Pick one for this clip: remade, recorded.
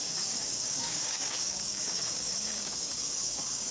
remade